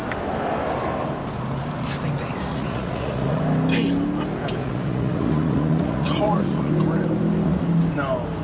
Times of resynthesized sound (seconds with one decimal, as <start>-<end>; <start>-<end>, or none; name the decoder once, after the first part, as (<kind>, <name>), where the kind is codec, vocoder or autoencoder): 2.5-3.4 (vocoder, Vocos); 4.6-6.7